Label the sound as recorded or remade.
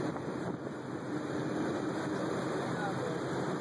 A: recorded